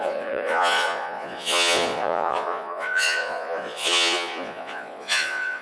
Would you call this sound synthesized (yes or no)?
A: yes